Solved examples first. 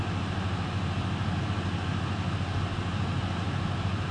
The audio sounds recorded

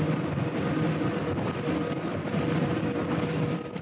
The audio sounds recorded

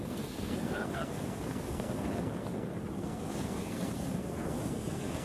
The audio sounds remade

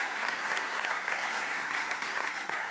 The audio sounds remade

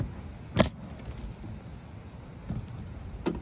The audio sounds recorded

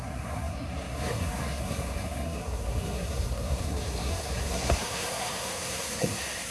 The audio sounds remade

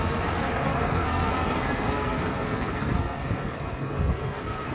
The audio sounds remade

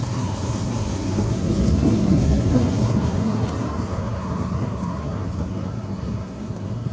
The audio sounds remade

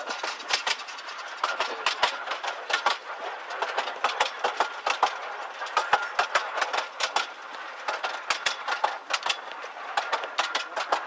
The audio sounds recorded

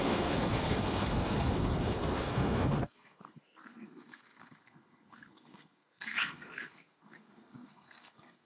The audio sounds remade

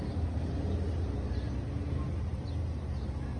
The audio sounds recorded